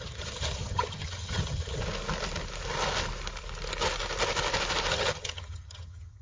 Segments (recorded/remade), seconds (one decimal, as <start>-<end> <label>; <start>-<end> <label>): 0.0-1.8 remade; 1.8-4.9 recorded; 4.9-6.2 remade